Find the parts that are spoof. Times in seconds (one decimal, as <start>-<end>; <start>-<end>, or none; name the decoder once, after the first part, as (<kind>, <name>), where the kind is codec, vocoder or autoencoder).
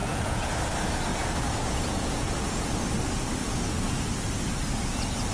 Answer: 0.0-0.5 (vocoder, Vocos); 1.1-2.6; 3.4-4.0